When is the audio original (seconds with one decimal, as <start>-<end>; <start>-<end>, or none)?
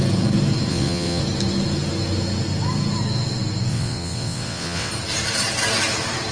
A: 0.0-0.7; 1.2-3.7; 4.9-6.3